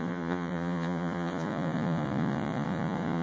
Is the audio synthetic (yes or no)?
yes